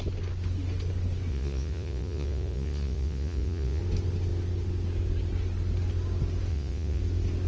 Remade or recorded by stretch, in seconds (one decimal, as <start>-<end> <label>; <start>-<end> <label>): 0.0-1.3 recorded; 1.3-3.8 remade; 3.8-6.5 recorded; 6.5-7.0 remade; 7.0-7.5 recorded